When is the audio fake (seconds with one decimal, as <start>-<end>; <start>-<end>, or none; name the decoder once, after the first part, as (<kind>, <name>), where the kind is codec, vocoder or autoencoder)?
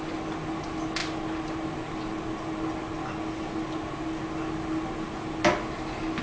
none